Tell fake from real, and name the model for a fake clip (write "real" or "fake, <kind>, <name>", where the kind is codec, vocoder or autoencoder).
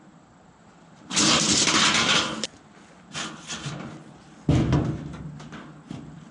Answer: real